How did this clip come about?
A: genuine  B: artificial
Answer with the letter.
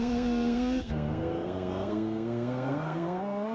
B